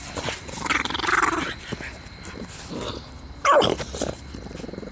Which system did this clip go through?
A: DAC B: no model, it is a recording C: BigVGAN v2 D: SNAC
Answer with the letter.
B